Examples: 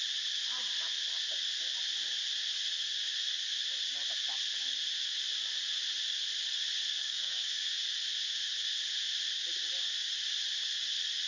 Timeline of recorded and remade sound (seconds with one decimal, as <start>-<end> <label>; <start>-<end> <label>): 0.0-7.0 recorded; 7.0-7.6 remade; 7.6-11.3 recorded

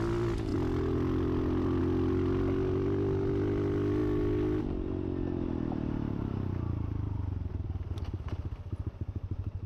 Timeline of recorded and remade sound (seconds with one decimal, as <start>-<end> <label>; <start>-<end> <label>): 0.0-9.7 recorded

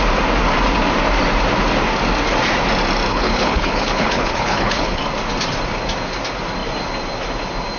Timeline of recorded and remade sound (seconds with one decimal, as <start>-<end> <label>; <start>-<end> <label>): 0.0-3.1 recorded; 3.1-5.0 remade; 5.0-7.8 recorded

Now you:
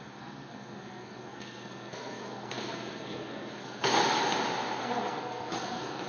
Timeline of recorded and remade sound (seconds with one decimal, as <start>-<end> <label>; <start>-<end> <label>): 0.0-4.0 remade; 4.0-4.8 recorded; 4.8-6.1 remade

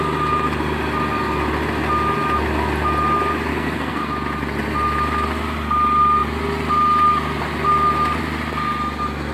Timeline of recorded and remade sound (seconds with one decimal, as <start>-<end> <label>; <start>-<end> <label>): 0.0-3.5 recorded; 3.5-4.1 remade; 4.1-9.3 recorded

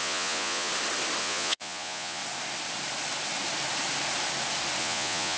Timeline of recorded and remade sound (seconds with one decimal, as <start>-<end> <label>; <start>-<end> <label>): 0.0-0.7 remade; 0.7-1.2 recorded; 1.2-2.2 remade; 2.2-4.8 recorded; 4.8-5.4 remade

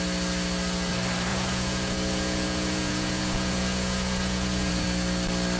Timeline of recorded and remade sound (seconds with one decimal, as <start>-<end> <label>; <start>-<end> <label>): 0.0-1.3 recorded; 1.3-4.7 remade; 4.7-5.6 recorded